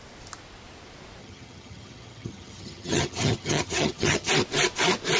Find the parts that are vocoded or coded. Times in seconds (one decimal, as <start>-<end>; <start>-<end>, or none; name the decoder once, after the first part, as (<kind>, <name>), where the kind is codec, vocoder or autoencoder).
1.2-4.3 (vocoder, HiFi-GAN)